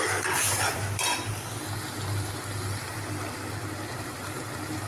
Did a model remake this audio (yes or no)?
yes